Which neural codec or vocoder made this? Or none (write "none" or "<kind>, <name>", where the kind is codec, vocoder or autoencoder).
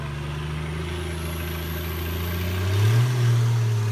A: none